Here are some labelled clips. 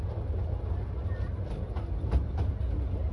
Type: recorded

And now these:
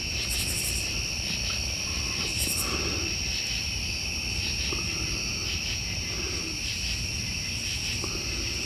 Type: recorded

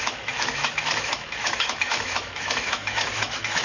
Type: remade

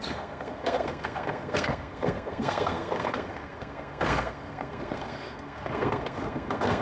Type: remade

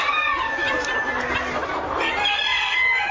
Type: recorded